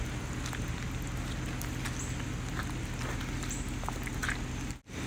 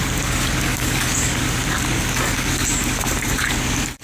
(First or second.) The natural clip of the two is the first